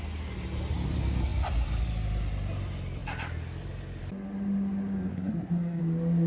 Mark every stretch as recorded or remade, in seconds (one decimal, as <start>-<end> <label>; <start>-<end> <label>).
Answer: 0.0-5.1 recorded; 5.1-5.8 remade; 5.8-6.3 recorded